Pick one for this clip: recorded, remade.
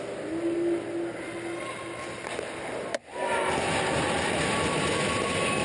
recorded